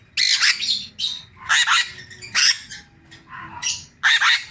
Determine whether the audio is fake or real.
real